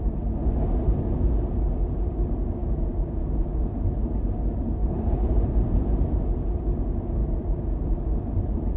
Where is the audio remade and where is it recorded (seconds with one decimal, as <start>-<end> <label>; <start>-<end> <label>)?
0.0-2.6 recorded; 2.6-3.2 remade; 3.2-4.8 recorded; 4.8-6.2 remade; 6.2-7.2 recorded; 7.2-8.8 remade